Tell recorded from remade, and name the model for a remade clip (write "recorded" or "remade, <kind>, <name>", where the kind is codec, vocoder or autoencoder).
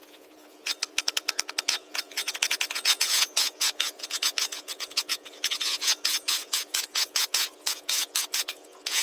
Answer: remade, vocoder, Vocos